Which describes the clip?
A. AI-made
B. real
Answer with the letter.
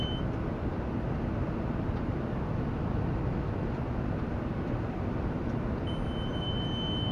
B